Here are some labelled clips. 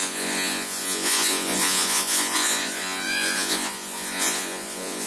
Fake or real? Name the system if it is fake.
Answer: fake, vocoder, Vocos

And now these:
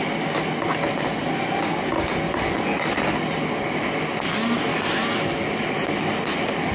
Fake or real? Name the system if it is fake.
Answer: real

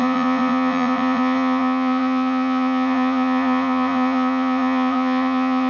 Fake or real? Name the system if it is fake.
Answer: fake, vocoder, Vocos